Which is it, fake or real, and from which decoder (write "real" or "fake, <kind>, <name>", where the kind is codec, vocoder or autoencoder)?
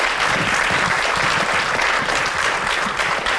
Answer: real